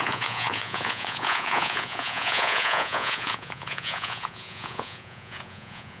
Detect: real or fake fake